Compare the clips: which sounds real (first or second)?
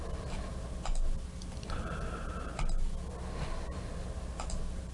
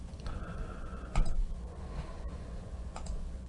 first